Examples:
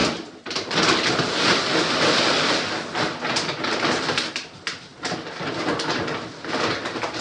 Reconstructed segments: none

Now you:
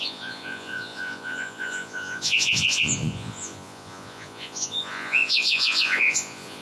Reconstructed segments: 0.0-6.6 (vocoder, Vocos)

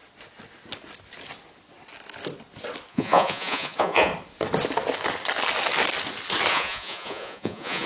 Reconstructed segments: 2.9-4.1 (vocoder, Vocos); 6.5-7.9

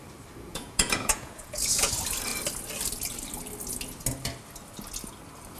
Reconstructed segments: 0.5-1.9 (vocoder, Vocos)

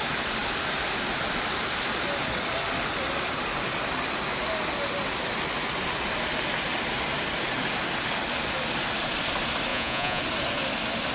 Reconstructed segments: 9.7-10.2 (vocoder, Vocos)

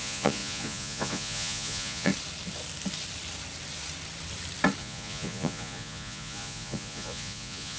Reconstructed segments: 0.0-2.1 (vocoder, Vocos); 4.8-7.8

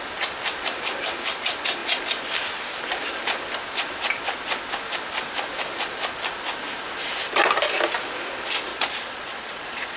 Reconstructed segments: 8.7-10.0 (vocoder, Vocos)